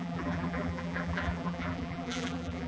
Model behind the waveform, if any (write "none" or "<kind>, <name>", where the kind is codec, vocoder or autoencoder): vocoder, BigVGAN v2